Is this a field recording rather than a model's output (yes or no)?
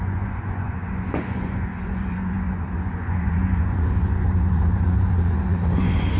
no